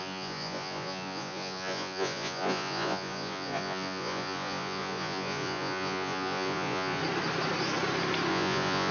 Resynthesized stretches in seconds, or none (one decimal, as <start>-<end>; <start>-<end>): 0.0-7.0; 8.3-8.9